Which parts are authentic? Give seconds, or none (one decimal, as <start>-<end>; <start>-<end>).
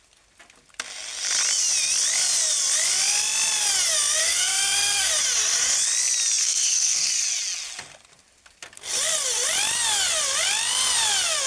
0.0-4.2; 5.1-6.4; 7.1-11.5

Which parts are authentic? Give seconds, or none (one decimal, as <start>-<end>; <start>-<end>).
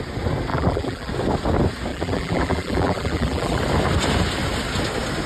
0.0-0.5; 1.1-1.9; 3.6-5.3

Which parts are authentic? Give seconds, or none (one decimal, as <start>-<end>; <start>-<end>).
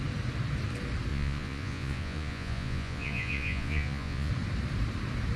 0.0-1.1; 4.3-5.4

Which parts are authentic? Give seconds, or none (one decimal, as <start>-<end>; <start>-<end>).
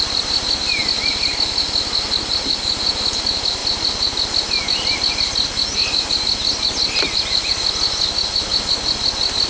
0.0-9.5